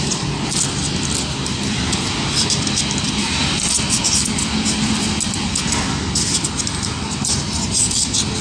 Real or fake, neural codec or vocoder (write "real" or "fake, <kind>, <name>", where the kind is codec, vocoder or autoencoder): real